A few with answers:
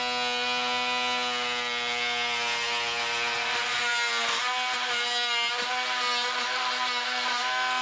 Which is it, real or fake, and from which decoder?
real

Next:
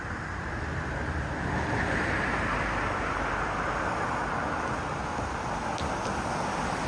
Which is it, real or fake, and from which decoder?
real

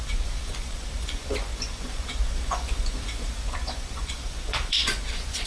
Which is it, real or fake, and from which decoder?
fake, vocoder, Vocos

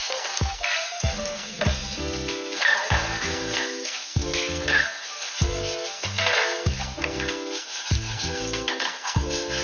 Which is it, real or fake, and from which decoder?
fake, codec, SNAC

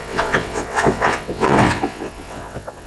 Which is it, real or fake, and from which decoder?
fake, vocoder, WaveNeXt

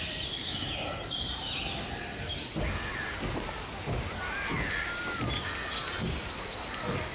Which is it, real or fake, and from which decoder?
real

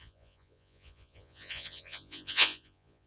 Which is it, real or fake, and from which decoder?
fake, vocoder, Vocos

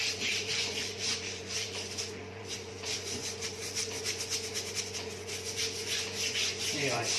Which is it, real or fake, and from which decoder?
fake, vocoder, Vocos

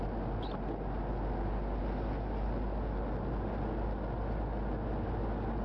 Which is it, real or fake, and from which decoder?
real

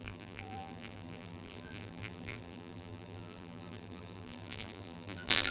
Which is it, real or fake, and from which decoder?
fake, vocoder, BigVGAN v2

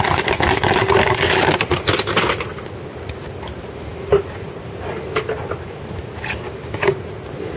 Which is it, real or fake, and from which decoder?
real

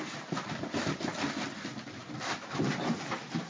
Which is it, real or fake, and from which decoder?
fake, vocoder, BigVGAN v2